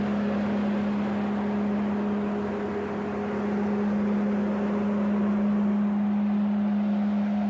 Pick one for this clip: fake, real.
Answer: real